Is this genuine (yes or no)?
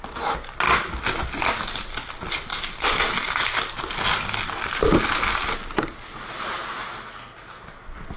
yes